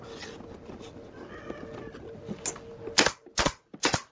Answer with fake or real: real